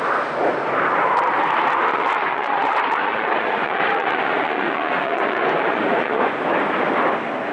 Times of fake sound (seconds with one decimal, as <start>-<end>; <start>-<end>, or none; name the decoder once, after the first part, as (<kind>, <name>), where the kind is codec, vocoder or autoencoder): 1.9-6.4 (vocoder, Vocos)